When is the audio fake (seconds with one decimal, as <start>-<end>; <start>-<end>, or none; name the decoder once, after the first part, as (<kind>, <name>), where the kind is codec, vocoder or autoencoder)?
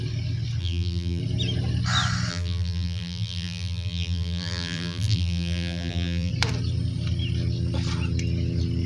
0.6-1.2 (vocoder, BigVGAN v2); 2.3-6.3